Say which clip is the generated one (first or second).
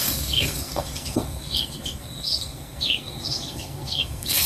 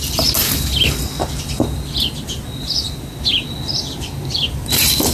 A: first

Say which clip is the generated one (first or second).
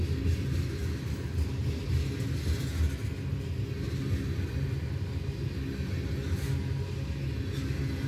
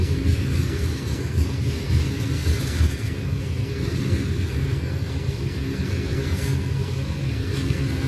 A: second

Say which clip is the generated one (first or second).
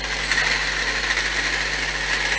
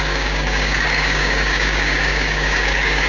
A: second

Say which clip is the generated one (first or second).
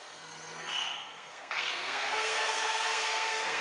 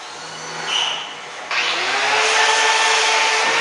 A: first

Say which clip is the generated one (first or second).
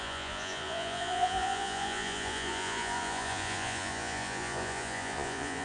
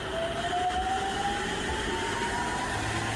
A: first